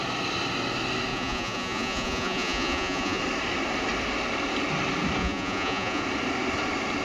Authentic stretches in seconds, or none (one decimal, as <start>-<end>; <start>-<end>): 0.0-1.1; 3.2-5.2; 6.0-7.0